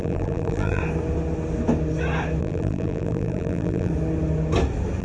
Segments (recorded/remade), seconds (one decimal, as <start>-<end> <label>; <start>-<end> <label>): 0.0-0.8 remade; 0.8-2.4 recorded; 2.4-3.9 remade; 3.9-5.0 recorded

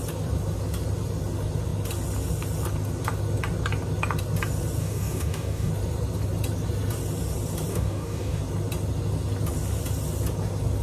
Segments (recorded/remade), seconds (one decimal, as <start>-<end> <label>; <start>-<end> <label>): 0.0-4.8 recorded; 4.8-5.7 remade; 5.7-7.7 recorded; 7.7-8.4 remade; 8.4-10.8 recorded

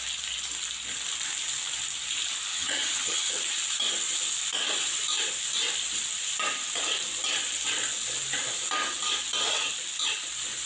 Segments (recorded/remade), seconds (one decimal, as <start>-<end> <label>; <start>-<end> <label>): 0.0-2.5 recorded; 2.5-3.3 remade; 3.3-10.7 recorded

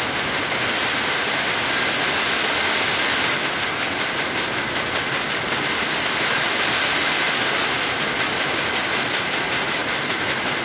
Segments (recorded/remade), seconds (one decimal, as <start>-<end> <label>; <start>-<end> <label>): 0.0-10.6 recorded

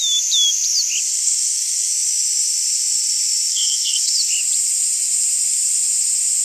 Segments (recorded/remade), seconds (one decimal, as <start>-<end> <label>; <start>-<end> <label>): 0.0-1.1 recorded; 1.1-1.9 remade; 1.9-3.5 recorded; 3.5-4.1 remade; 4.1-6.4 recorded

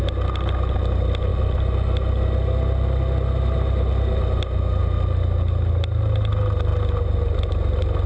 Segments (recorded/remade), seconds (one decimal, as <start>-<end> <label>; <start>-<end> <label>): 0.0-8.1 recorded

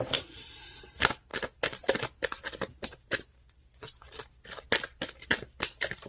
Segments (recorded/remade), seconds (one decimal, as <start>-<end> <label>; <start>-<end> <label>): 0.0-6.1 recorded